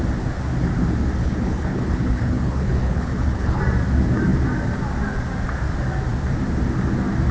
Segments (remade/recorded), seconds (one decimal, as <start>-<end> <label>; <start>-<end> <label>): 0.0-1.2 recorded; 1.2-3.6 remade; 3.6-7.3 recorded